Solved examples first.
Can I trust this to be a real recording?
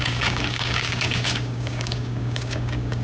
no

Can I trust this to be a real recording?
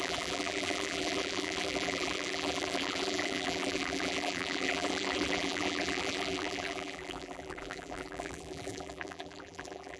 no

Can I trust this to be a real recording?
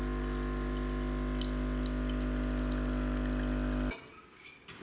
yes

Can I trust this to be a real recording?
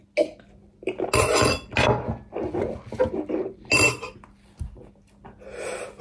yes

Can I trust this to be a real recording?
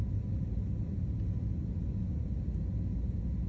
yes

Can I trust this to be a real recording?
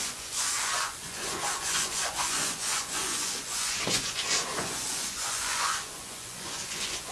no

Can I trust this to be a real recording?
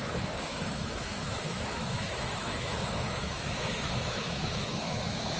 no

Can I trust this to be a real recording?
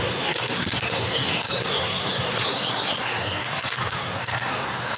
no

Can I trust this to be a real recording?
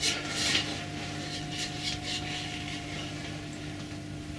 yes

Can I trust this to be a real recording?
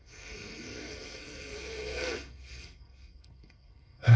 no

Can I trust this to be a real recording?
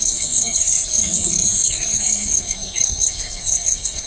no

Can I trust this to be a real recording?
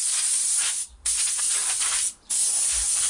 yes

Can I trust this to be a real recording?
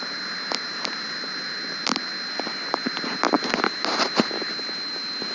yes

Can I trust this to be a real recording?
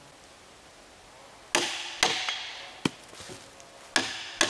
yes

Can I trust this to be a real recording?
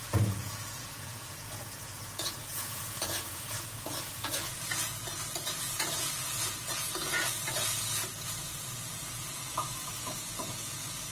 no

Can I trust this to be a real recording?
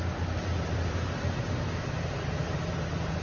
yes